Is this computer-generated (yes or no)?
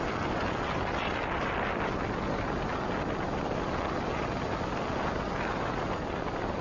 no